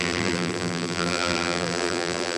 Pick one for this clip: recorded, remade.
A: remade